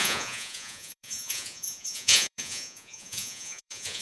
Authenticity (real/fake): fake